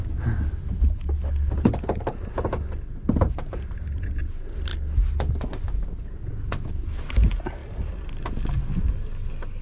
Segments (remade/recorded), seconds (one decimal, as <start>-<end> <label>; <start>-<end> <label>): 0.0-9.6 recorded